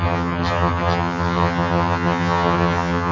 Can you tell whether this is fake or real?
fake